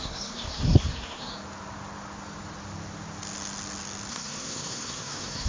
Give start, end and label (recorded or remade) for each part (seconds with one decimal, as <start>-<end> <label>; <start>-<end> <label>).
0.0-1.3 remade; 1.3-4.1 recorded; 4.1-5.5 remade